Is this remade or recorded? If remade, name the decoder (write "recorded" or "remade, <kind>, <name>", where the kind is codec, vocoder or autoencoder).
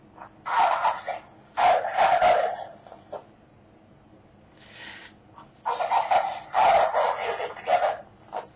recorded